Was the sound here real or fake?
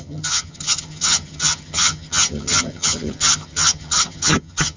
fake